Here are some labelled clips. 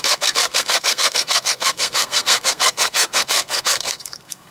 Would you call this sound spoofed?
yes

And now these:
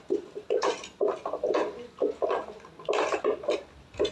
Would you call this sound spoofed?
no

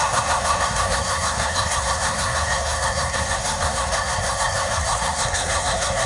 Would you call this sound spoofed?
yes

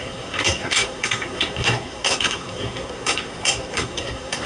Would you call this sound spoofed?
yes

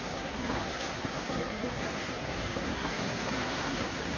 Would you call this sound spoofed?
yes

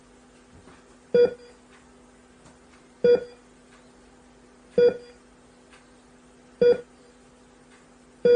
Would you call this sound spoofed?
no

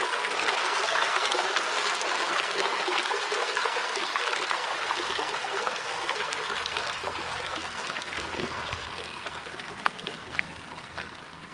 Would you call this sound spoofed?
yes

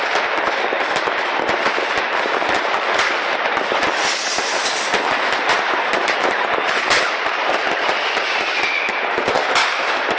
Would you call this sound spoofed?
no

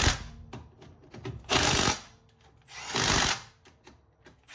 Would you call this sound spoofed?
no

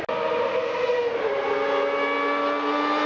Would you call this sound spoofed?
no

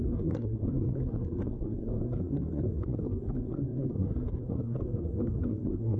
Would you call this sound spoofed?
yes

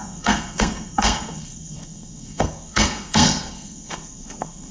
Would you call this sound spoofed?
yes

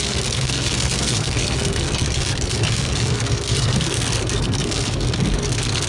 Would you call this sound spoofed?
yes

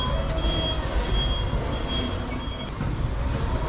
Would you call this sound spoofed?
no